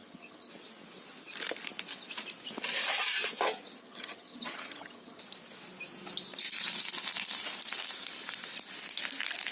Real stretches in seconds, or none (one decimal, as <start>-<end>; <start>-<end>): 0.5-3.8; 5.2-9.5